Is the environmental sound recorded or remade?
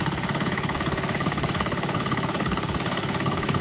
remade